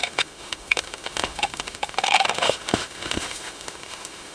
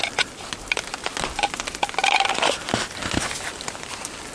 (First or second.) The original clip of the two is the second